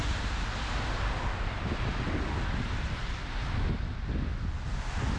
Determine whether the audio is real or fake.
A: real